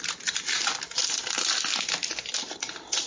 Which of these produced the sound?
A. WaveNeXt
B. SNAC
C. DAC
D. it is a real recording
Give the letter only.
D